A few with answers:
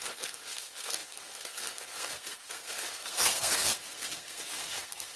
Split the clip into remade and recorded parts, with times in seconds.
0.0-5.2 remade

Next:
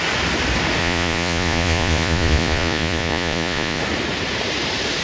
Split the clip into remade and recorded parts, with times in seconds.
0.0-0.8 recorded; 0.8-3.8 remade; 3.8-5.0 recorded

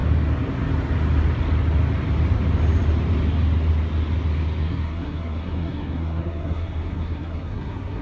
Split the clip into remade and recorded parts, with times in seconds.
0.0-4.6 recorded; 4.6-8.0 remade

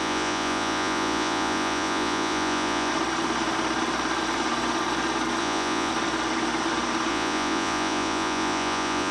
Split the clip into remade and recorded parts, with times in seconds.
0.0-2.9 remade; 2.9-5.4 recorded; 5.4-5.9 remade; 5.9-7.1 recorded; 7.1-9.1 remade

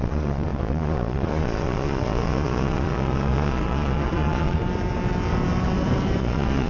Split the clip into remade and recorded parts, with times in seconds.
0.0-4.6 remade; 4.6-6.2 recorded; 6.2-6.7 remade

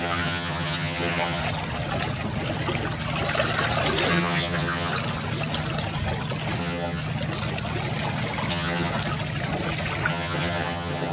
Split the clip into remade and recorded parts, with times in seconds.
0.0-1.4 remade; 1.4-4.1 recorded; 4.1-4.9 remade; 4.9-6.6 recorded; 6.6-7.0 remade; 7.0-8.5 recorded; 8.5-8.9 remade; 8.9-10.1 recorded; 10.1-11.1 remade